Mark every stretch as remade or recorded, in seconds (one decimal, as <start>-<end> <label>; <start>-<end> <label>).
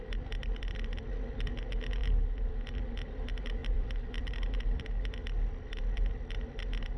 0.0-2.0 recorded; 2.0-2.5 remade; 2.5-3.6 recorded; 3.6-4.3 remade; 4.3-7.0 recorded